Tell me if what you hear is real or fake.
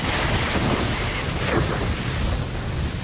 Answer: real